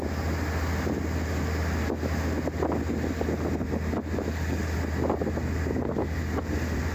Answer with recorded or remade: recorded